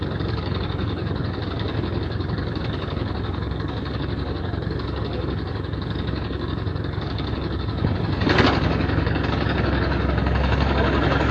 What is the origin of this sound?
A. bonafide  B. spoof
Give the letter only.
B